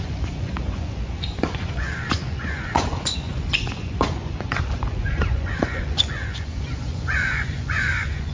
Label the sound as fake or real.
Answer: fake